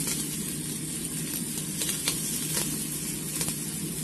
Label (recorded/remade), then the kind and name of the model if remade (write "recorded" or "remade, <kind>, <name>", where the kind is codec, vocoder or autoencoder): recorded